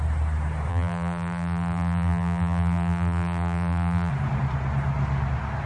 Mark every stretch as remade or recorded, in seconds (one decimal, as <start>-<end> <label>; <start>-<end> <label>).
0.0-0.7 recorded; 0.7-4.1 remade; 4.1-5.7 recorded

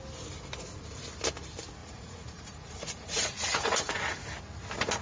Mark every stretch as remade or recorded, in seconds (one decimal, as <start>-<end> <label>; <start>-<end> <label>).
0.0-1.8 recorded; 1.8-3.9 remade; 3.9-5.0 recorded

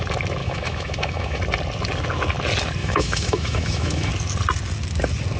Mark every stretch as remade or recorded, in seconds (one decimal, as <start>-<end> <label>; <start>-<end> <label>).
0.0-0.4 recorded; 0.4-1.4 remade; 1.4-2.8 recorded; 2.8-4.1 remade; 4.1-5.4 recorded